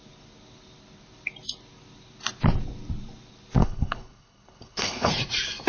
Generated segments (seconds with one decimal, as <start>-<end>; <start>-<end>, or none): 3.6-5.1